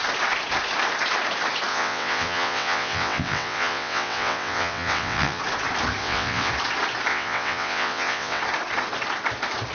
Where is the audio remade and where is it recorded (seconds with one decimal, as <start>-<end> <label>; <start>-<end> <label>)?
0.0-1.7 recorded; 1.7-5.4 remade; 5.4-6.0 recorded; 6.0-6.5 remade; 6.5-7.1 recorded; 7.1-8.4 remade; 8.4-9.7 recorded